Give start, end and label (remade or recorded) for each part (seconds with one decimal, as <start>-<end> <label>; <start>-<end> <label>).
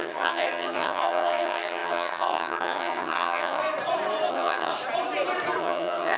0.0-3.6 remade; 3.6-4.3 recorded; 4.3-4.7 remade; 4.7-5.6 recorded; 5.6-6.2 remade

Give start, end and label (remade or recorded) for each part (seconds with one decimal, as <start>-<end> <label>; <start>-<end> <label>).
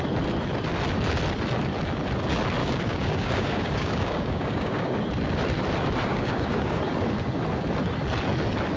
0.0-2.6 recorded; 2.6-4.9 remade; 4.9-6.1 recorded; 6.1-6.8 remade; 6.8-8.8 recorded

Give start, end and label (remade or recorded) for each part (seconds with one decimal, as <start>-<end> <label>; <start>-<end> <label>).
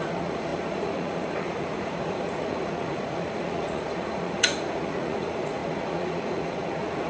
0.0-7.1 remade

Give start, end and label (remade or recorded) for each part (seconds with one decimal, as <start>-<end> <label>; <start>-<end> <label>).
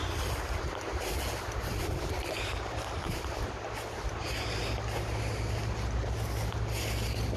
0.0-7.4 recorded